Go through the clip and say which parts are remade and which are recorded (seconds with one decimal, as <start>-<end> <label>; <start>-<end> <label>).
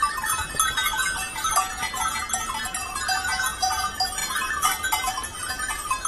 0.0-4.2 recorded; 4.2-5.1 remade; 5.1-6.1 recorded